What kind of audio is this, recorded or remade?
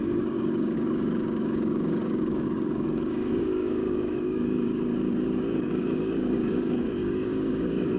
remade